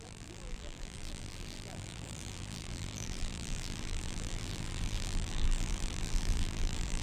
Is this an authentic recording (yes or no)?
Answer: no